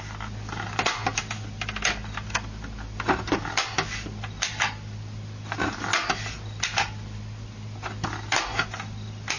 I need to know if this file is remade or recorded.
recorded